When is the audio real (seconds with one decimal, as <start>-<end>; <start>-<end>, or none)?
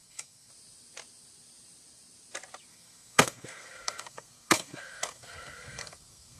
0.5-2.7